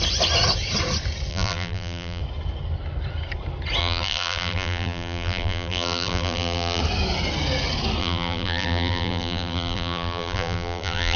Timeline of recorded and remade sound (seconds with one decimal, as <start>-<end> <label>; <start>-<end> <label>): 0.0-1.3 recorded; 1.3-2.2 remade; 2.2-3.8 recorded; 3.8-6.8 remade; 6.8-8.0 recorded; 8.0-11.2 remade